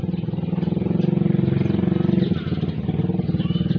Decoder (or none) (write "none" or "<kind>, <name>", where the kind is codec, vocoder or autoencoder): none